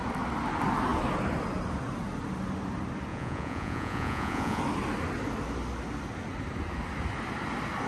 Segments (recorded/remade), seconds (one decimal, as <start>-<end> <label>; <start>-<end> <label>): 0.0-3.1 recorded; 3.1-4.6 remade; 4.6-7.9 recorded